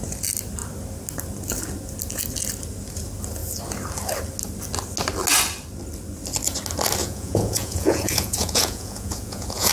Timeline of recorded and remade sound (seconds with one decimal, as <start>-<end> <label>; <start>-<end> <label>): 0.0-7.0 recorded; 7.0-9.7 remade